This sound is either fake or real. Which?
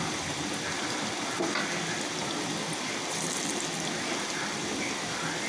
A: real